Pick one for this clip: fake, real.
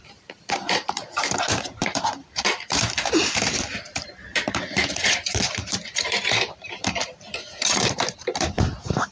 fake